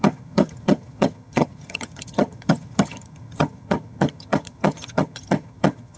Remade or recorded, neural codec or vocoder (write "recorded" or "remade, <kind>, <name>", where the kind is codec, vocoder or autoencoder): remade, vocoder, HiFi-GAN